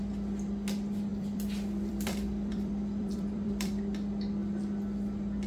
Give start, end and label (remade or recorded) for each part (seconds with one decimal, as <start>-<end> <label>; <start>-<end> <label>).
0.0-1.1 recorded; 1.1-3.8 remade; 3.8-5.5 recorded